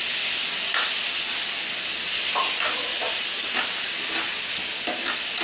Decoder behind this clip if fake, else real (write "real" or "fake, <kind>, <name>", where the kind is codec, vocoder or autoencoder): real